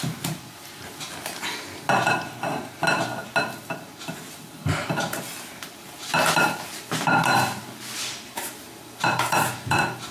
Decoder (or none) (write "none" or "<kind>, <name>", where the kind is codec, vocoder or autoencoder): none